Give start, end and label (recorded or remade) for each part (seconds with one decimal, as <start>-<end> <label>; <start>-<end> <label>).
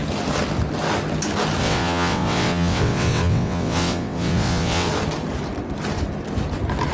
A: 0.0-1.6 recorded; 1.6-4.9 remade; 4.9-6.9 recorded